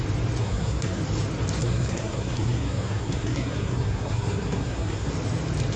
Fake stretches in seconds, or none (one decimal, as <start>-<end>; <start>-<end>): 0.4-1.0; 1.6-5.1